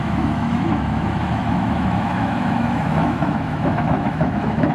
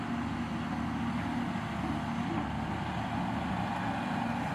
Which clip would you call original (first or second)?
second